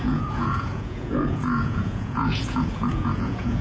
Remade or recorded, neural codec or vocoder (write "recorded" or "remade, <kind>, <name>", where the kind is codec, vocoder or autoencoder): remade, vocoder, Vocos